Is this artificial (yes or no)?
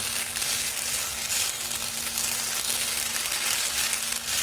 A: no